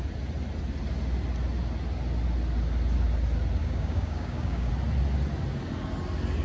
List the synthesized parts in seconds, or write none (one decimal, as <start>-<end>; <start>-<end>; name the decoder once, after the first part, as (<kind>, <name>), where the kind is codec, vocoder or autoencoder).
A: 3.6-4.7 (codec, DAC)